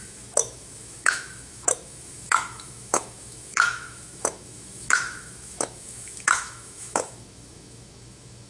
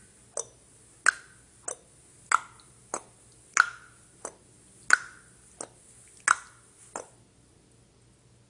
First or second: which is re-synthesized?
first